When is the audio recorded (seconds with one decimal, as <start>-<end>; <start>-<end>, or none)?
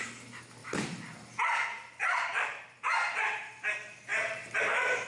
0.0-0.6; 1.2-2.0; 2.8-4.1; 4.6-5.1